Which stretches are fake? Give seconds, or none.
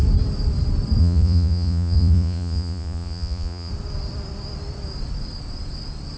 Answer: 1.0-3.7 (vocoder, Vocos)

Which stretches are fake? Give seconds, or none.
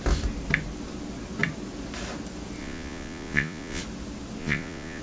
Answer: 2.6-3.8 (vocoder, Vocos); 4.4-5.0